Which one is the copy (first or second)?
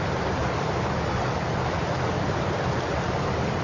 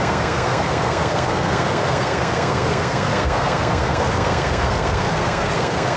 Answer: second